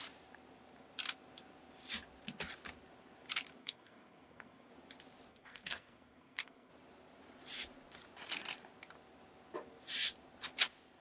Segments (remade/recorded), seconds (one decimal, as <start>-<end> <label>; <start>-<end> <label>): 0.0-3.6 recorded; 3.6-4.7 remade; 4.7-5.3 recorded; 5.3-6.7 remade; 6.7-11.0 recorded